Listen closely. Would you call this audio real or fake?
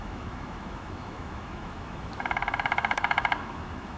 fake